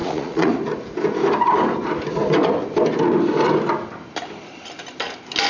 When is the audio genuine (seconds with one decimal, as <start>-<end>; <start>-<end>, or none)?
0.5-5.5